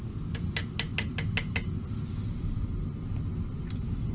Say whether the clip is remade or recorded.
recorded